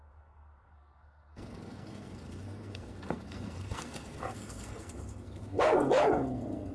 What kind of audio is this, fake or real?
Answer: fake